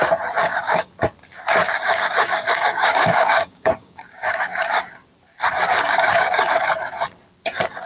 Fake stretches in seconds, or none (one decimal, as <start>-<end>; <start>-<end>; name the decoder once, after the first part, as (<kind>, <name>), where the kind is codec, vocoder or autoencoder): 0.4-0.9 (codec, DAC); 1.6-4.8; 5.7-6.5